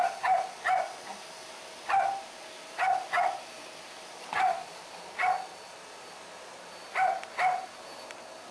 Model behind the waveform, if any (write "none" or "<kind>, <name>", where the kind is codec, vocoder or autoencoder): vocoder, BigVGAN v2